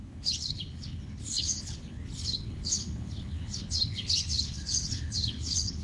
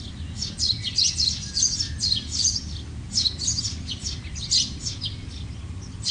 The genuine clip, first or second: second